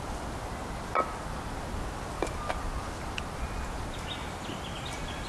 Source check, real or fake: real